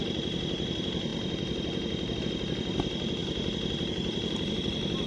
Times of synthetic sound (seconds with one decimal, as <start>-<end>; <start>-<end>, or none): none